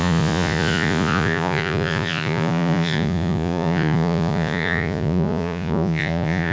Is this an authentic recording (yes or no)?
no